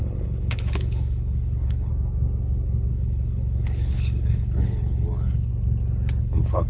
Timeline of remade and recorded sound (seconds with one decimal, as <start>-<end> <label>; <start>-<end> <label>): 0.0-1.9 remade; 1.9-2.9 recorded; 2.9-5.5 remade; 5.5-6.2 recorded; 6.2-6.7 remade